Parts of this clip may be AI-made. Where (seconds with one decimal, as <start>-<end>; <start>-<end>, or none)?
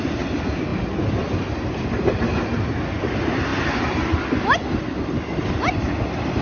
none